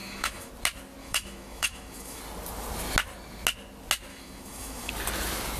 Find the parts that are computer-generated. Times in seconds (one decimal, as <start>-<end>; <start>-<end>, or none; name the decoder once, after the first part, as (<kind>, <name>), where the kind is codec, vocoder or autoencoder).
0.0-0.5 (autoencoder, DAC-VAE); 1.0-2.2; 4.1-4.9